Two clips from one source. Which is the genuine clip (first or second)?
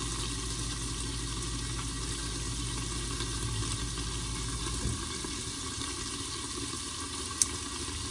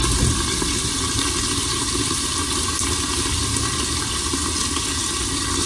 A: first